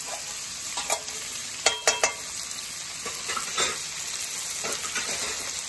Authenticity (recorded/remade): recorded